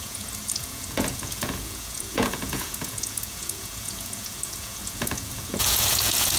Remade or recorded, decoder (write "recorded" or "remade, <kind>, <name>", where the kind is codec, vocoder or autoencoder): remade, vocoder, Vocos